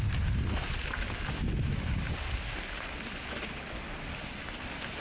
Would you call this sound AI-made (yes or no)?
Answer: no